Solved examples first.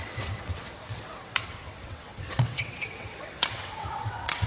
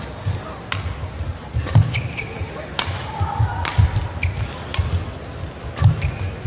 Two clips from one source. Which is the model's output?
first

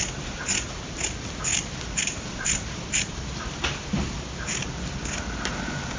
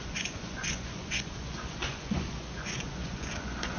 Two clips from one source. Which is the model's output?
second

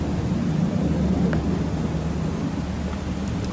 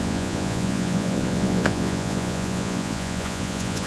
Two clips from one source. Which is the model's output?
second